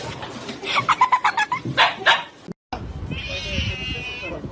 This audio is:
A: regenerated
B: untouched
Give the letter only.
B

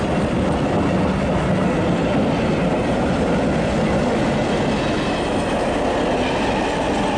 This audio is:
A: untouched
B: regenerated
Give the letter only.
A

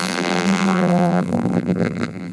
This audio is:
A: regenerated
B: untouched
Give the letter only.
A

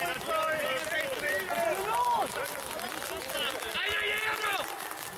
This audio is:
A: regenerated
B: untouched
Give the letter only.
B